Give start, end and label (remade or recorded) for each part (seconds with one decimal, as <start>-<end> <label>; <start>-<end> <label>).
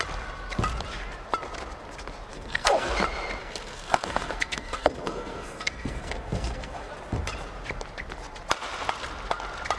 0.0-2.3 recorded; 2.3-2.9 remade; 2.9-3.4 recorded; 3.4-6.9 remade; 6.9-9.8 recorded